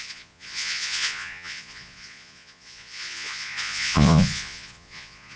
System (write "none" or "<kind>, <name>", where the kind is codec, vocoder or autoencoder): vocoder, Vocos